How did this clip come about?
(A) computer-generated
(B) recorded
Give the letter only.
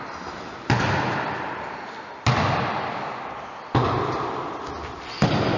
B